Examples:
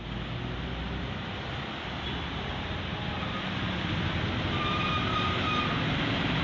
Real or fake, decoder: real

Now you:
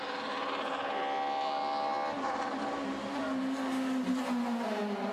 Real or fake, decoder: real